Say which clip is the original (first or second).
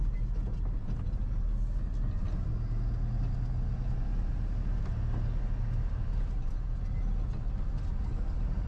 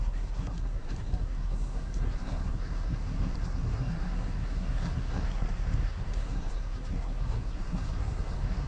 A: first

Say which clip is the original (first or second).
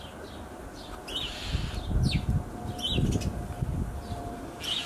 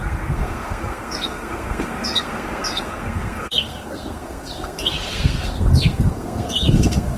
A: first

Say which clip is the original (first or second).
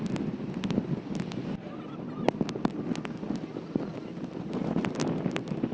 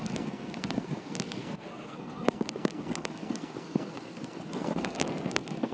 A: first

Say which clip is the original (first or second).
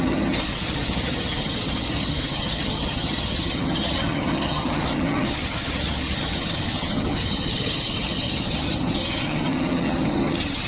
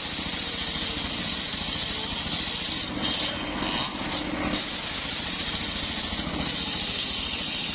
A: second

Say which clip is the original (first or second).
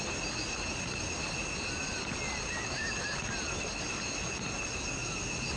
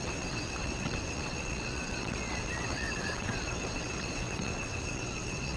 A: first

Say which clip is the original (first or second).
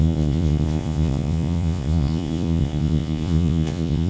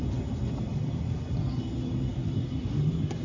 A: second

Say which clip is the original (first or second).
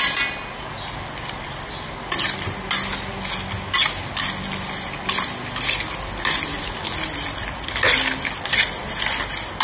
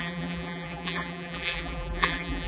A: first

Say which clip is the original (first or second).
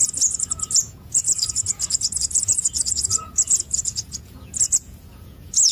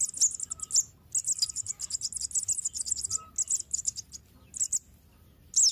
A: second